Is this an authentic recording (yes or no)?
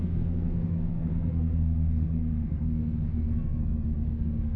no